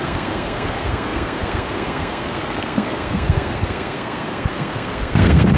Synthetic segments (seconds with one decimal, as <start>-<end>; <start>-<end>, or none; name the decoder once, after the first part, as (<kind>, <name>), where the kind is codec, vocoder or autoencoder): 0.0-5.6 (codec, SNAC)